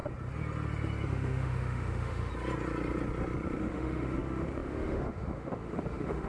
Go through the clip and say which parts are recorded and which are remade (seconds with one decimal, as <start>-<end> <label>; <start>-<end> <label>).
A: 0.0-1.1 recorded; 1.1-2.3 remade; 2.3-3.6 recorded; 3.6-6.3 remade